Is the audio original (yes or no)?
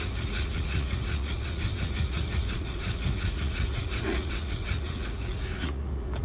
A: no